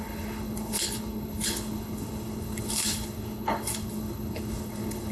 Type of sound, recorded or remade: remade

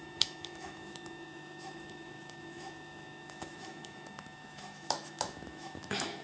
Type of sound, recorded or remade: remade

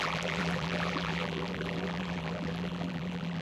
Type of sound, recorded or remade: remade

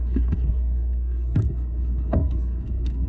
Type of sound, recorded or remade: remade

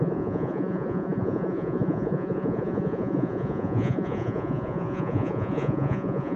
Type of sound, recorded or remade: remade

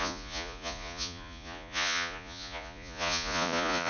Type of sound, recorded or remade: remade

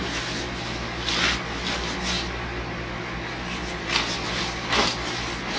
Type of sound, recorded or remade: recorded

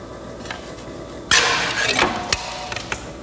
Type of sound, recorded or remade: recorded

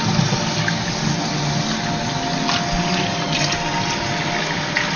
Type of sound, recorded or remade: recorded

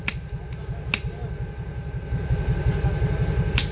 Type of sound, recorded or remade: recorded